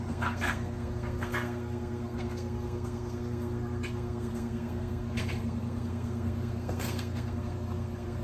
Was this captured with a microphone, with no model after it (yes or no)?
no